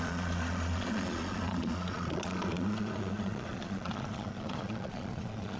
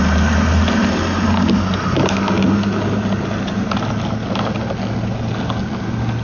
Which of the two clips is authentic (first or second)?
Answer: second